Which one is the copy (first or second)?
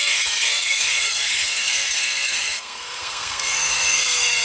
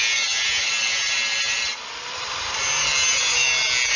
first